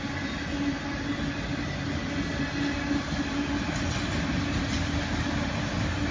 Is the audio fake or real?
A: real